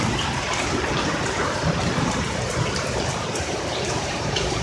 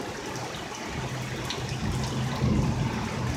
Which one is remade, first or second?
first